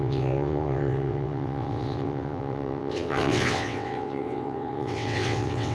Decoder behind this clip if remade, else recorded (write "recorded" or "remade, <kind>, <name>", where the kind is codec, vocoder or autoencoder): remade, vocoder, WaveNeXt